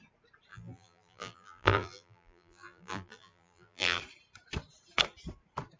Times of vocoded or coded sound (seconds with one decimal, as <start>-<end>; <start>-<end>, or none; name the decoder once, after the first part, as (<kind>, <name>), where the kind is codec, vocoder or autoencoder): 0.5-4.0 (vocoder, BigVGAN v2)